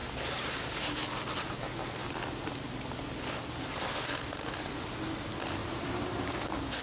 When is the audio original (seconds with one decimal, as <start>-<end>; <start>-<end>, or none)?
1.1-2.0; 2.5-5.6; 6.3-6.8

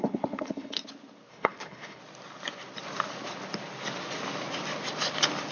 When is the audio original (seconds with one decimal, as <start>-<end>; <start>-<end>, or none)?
0.8-1.3; 2.0-5.5

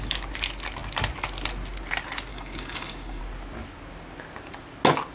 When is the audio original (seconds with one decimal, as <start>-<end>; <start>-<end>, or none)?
0.0-2.3; 3.2-5.1

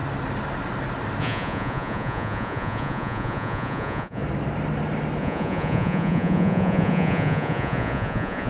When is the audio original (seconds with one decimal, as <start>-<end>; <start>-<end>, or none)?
0.0-1.2; 4.2-5.2

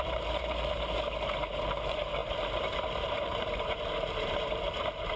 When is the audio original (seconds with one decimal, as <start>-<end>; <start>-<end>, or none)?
none

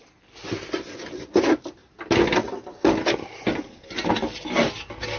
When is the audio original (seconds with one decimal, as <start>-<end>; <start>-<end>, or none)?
0.0-5.2